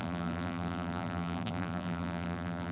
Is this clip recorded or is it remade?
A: remade